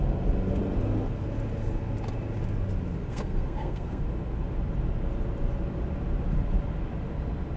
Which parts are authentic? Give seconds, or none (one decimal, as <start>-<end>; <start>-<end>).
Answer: 0.0-3.1; 4.0-7.6